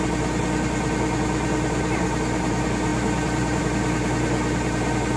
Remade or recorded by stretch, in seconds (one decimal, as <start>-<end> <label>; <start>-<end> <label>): 0.0-5.2 recorded